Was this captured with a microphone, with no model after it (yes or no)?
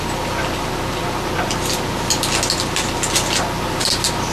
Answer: yes